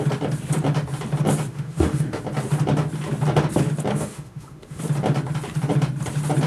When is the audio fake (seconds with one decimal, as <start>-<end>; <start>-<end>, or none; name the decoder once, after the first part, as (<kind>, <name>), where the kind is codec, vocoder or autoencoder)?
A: 1.5-2.2 (autoencoder, DAC-VAE); 3.9-4.8